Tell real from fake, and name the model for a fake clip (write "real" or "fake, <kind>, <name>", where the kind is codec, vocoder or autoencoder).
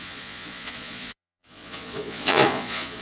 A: fake, vocoder, Vocos